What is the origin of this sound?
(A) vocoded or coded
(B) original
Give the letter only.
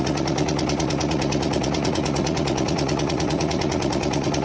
A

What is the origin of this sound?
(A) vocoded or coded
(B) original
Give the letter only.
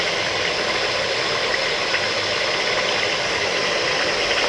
B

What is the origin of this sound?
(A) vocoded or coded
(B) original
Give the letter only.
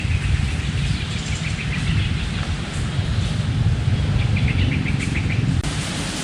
B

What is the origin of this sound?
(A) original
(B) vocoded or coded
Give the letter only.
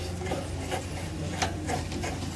A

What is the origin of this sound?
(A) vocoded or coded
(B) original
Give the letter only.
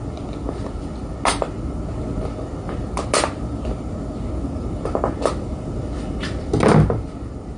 B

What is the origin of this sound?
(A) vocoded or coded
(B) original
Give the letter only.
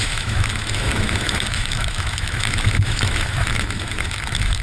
A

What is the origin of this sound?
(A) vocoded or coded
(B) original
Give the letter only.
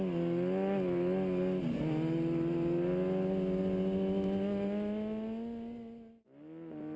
B